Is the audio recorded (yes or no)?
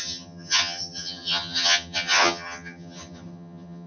no